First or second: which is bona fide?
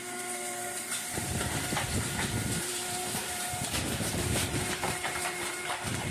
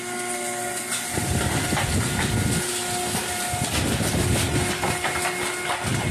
second